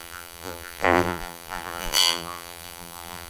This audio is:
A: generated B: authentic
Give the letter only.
A